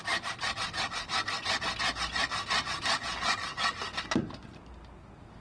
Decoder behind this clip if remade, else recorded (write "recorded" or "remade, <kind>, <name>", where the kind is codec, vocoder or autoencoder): recorded